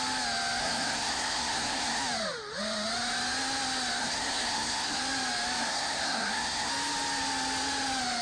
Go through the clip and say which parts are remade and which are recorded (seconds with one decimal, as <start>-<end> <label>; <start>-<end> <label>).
0.0-0.6 recorded; 0.6-2.0 remade; 2.0-4.0 recorded; 4.0-5.0 remade; 5.0-5.6 recorded; 5.6-6.7 remade; 6.7-8.2 recorded